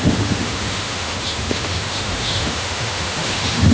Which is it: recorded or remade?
remade